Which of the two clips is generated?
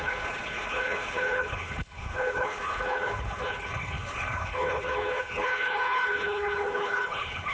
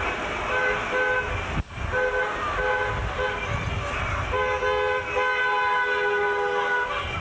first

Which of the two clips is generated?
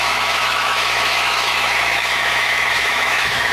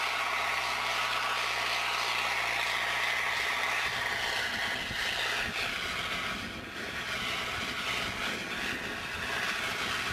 first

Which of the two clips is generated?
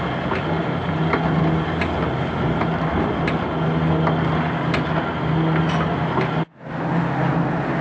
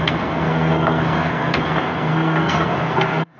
second